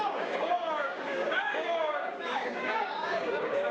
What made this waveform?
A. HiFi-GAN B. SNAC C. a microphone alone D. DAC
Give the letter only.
D